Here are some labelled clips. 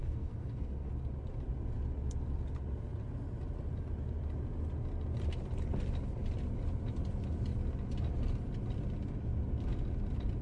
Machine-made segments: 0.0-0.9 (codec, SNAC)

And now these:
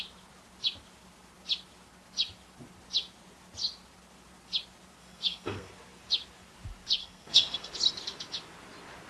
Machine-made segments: 5.0-5.7 (codec, SNAC); 7.0-7.7

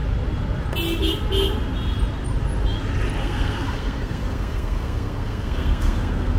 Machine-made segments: 3.2-6.4 (codec, SNAC)

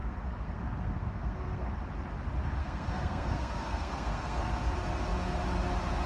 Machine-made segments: 0.0-1.7 (codec, SNAC); 2.6-4.5

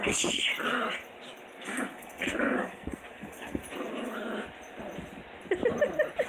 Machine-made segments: 0.0-0.5 (codec, SNAC); 1.6-3.6

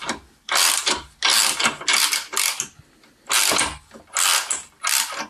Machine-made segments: none

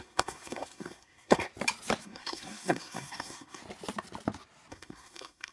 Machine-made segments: 0.0-1.5 (codec, SNAC); 2.0-3.6; 4.7-5.5